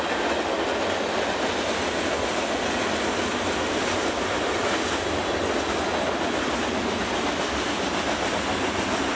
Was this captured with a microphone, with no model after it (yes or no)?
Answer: yes